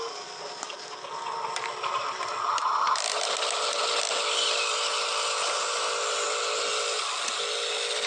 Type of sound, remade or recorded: recorded